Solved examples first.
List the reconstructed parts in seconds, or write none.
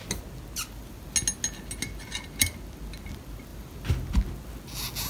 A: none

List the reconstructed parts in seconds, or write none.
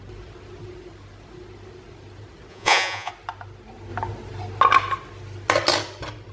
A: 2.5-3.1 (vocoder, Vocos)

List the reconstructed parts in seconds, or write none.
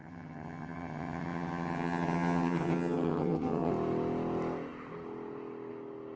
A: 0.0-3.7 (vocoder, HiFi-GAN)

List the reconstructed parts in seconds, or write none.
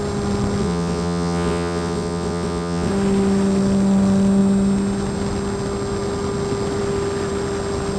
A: 0.6-2.9 (vocoder, WaveNeXt)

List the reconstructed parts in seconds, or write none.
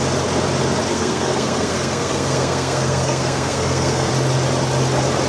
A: 0.9-4.1 (codec, SNAC)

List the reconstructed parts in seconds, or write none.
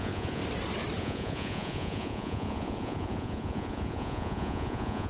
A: 0.0-0.4 (vocoder, Vocos); 1.0-5.1